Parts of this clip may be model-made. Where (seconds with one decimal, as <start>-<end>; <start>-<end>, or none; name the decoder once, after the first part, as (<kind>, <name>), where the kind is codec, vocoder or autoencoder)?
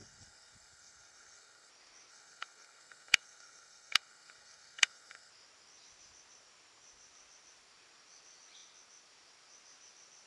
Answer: 0.0-1.7 (codec, SNAC); 2.1-5.3